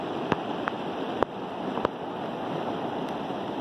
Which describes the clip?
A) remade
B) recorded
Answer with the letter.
B